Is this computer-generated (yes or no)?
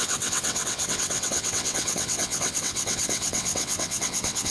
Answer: yes